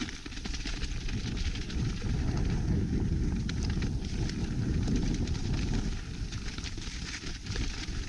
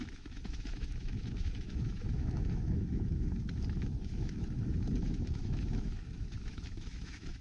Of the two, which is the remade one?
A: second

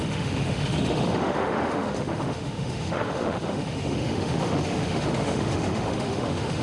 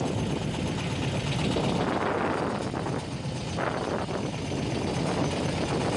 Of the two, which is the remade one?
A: first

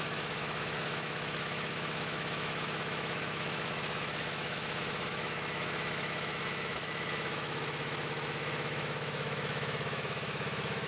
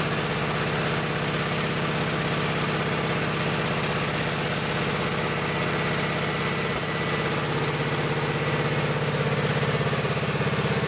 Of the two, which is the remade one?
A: first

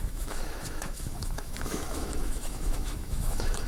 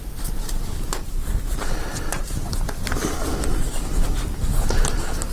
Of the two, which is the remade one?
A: first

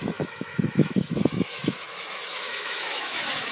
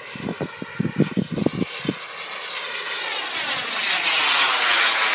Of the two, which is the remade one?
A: first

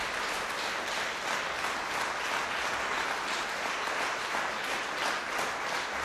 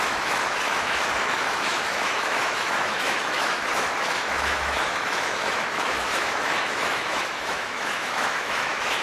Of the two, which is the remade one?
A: second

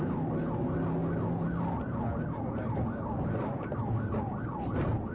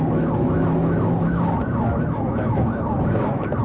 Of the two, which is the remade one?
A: second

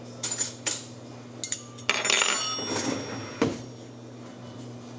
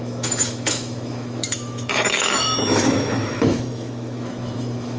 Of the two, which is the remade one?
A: second